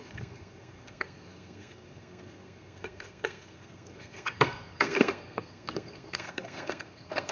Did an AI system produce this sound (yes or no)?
yes